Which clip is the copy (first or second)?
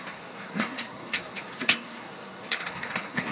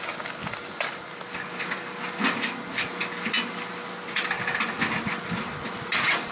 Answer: first